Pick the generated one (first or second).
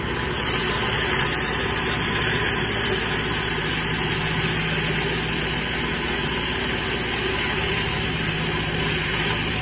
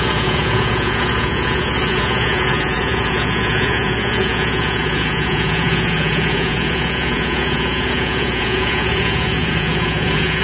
second